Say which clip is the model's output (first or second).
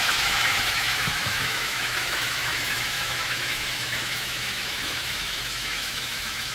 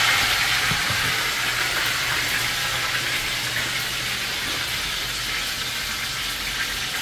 first